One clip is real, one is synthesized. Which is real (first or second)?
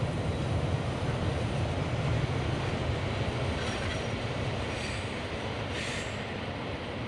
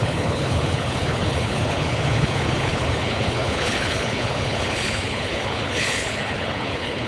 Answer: first